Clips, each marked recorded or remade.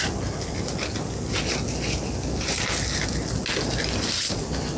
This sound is recorded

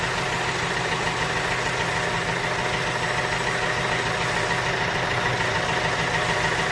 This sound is recorded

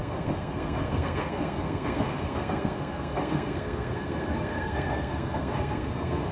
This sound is remade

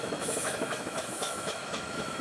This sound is remade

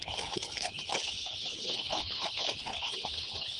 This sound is remade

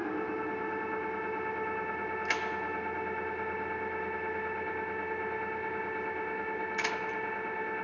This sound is recorded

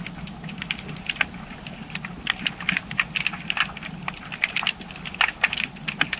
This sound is recorded